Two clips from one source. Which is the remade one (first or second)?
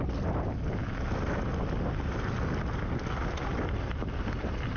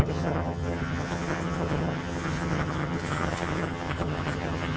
second